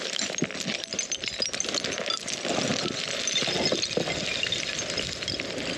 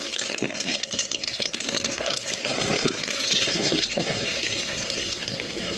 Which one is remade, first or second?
second